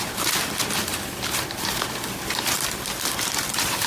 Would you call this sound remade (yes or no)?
yes